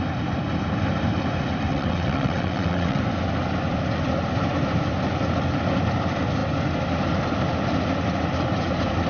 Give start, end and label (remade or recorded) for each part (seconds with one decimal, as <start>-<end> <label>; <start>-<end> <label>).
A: 0.0-1.7 recorded; 1.7-3.0 remade; 3.0-9.1 recorded